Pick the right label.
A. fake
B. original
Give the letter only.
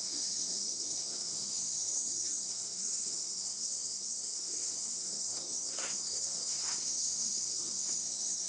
A